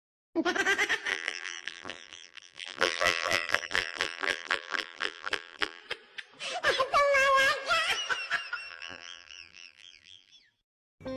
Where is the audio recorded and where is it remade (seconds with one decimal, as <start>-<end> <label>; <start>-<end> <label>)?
0.0-1.1 recorded; 1.1-5.8 remade; 5.8-8.7 recorded; 8.7-10.3 remade; 10.3-11.2 recorded